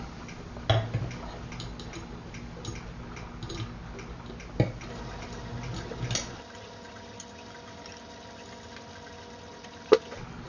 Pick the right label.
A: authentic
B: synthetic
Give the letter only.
A